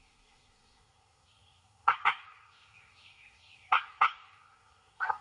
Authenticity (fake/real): fake